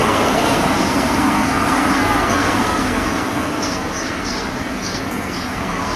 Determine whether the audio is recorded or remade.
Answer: remade